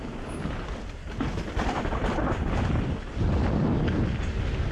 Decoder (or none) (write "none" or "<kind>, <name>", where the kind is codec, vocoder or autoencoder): none